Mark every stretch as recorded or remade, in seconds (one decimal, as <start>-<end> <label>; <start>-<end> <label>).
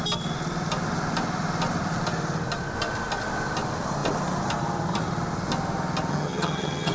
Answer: 0.0-6.1 recorded; 6.1-6.9 remade